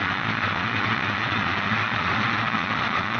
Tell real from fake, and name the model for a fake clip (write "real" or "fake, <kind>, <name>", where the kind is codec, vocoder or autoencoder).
fake, vocoder, Vocos